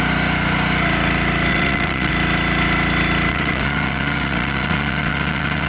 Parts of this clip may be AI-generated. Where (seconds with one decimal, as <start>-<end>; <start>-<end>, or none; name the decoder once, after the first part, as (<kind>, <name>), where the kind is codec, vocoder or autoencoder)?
1.5-2.1 (vocoder, WaveNeXt); 3.3-5.7